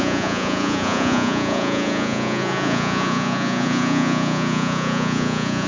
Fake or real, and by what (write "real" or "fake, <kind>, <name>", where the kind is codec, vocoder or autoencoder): fake, vocoder, Vocos